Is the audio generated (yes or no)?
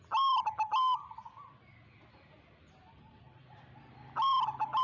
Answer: no